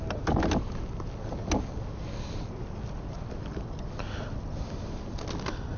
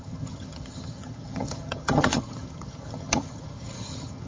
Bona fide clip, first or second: first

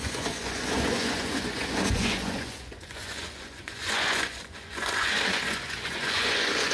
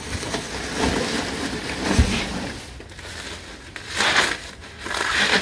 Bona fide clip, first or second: second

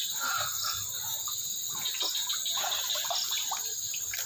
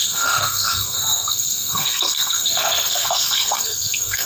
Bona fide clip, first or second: first